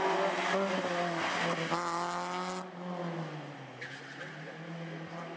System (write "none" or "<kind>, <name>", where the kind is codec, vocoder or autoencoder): none